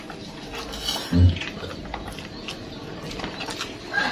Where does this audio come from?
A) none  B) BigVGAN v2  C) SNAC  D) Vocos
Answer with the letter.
A